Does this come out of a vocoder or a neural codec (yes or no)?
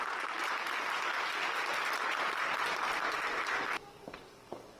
no